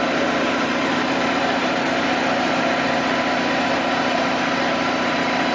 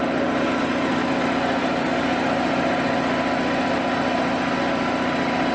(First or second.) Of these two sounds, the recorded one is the second